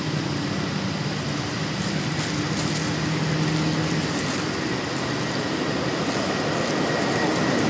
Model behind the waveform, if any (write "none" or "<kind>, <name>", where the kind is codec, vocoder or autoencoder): none